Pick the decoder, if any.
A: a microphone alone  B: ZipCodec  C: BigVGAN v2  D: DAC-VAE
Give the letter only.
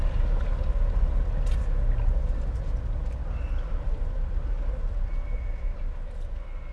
A